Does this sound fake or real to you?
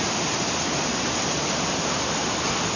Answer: real